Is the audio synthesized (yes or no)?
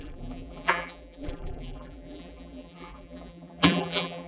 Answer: yes